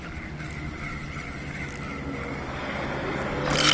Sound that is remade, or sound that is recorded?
recorded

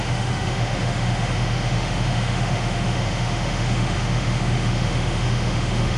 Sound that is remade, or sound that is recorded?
remade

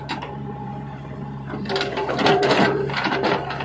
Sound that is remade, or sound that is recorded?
remade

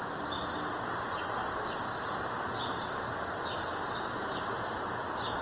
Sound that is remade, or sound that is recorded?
recorded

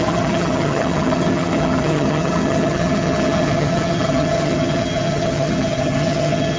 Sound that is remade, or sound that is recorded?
remade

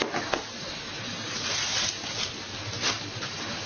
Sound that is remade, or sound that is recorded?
recorded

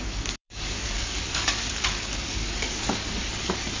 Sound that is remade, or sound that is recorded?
remade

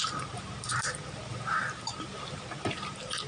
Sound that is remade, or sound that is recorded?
remade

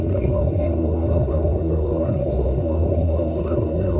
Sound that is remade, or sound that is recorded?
remade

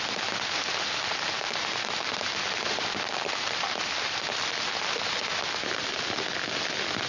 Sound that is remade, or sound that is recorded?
recorded